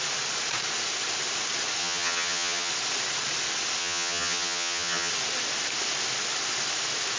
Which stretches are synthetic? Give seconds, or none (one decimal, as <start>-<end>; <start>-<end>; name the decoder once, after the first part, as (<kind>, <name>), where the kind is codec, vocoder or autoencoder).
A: 1.8-2.7 (vocoder, HiFi-GAN); 3.8-5.1